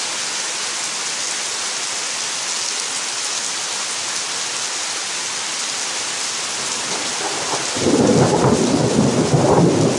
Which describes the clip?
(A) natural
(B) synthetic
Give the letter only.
A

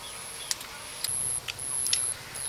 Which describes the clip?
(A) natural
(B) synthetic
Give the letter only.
A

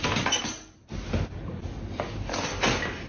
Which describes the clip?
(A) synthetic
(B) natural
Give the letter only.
B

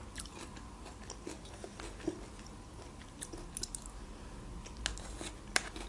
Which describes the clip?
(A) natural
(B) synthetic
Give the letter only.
A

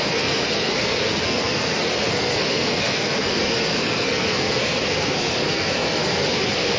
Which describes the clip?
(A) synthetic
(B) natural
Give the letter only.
A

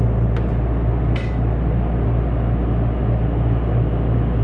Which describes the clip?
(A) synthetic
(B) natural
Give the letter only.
B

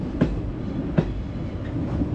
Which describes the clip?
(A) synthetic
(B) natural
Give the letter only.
B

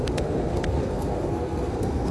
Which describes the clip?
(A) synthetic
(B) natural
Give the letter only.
A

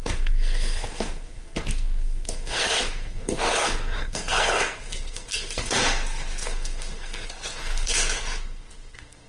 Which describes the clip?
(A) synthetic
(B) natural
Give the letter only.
A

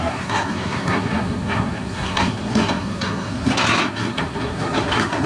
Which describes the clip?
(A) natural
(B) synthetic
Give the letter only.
B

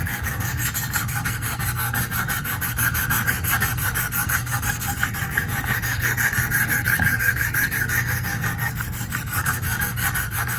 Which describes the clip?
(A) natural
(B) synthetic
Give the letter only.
B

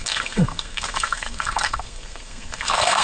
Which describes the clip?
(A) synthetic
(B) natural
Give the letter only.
A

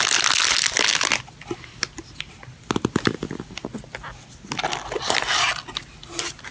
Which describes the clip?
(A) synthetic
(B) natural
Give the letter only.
B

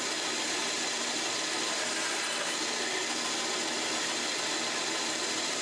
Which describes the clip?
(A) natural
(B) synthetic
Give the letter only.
A